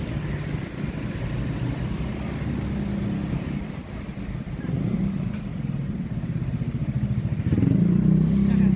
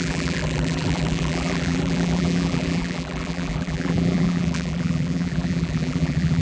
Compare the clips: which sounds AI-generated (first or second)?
second